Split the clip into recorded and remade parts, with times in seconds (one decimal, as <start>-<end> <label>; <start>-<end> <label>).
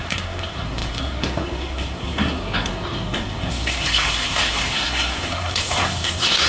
0.0-6.5 remade